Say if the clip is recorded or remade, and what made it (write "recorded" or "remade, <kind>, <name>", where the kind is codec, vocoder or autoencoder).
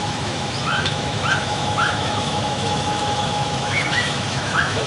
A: remade, autoencoder, DAC-VAE